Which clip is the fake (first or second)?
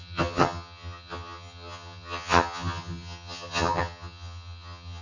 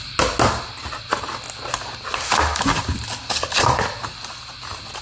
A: first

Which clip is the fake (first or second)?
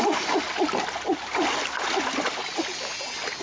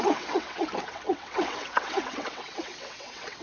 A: second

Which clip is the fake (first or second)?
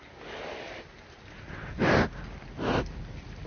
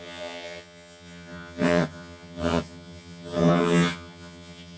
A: second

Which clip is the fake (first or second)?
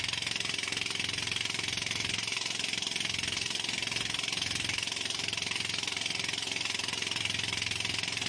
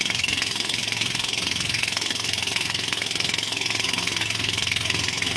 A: second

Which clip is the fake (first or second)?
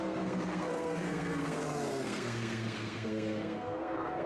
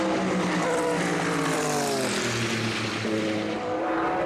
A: first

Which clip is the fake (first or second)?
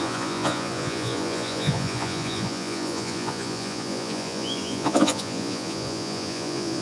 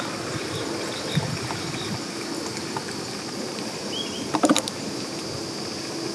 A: first